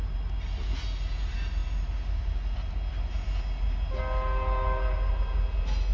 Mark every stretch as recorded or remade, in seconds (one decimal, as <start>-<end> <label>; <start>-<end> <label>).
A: 0.0-5.9 recorded